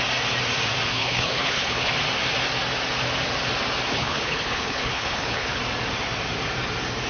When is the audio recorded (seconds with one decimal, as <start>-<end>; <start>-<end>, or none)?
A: 0.0-0.9; 1.9-3.9; 5.6-7.1